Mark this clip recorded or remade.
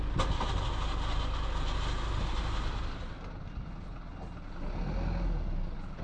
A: recorded